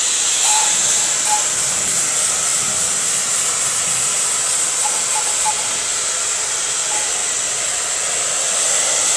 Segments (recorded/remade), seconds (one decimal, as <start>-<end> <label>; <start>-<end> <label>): 0.0-9.2 recorded

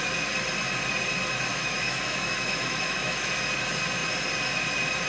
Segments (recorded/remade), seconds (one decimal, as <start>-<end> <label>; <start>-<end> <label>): 0.0-1.5 recorded; 1.5-3.3 remade; 3.3-5.1 recorded

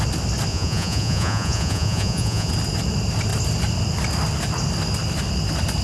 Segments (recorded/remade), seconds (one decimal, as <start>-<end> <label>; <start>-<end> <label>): 0.0-0.5 recorded; 0.5-2.5 remade; 2.5-5.8 recorded

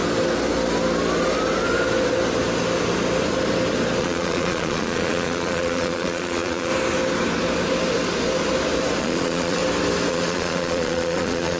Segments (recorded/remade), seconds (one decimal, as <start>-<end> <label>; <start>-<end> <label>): 0.0-4.0 recorded; 4.0-6.7 remade; 6.7-9.0 recorded; 9.0-9.6 remade; 9.6-10.1 recorded; 10.1-11.6 remade

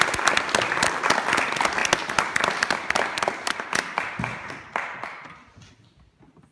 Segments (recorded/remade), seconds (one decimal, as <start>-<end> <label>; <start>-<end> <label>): 0.0-6.5 recorded

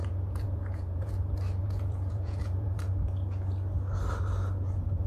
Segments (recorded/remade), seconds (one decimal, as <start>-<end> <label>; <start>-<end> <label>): 0.0-1.1 remade; 1.1-1.6 recorded; 1.6-2.9 remade; 2.9-5.1 recorded